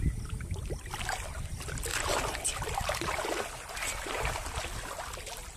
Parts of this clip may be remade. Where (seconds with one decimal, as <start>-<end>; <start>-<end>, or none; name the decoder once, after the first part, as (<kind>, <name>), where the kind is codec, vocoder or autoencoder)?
0.0-1.9 (vocoder, BigVGAN v2); 3.7-5.6